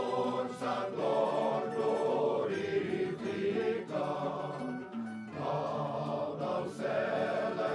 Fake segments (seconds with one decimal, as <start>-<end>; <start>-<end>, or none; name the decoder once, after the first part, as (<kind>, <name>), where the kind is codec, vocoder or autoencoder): 0.0-1.1 (vocoder, BigVGAN v2); 1.8-7.7